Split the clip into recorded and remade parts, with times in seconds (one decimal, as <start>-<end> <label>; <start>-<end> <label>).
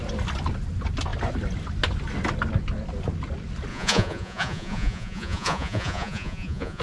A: 0.0-3.7 recorded; 3.7-6.8 remade